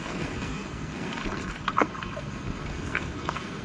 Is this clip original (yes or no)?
no